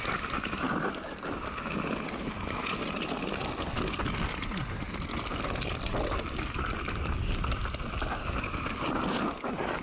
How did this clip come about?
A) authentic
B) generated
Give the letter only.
A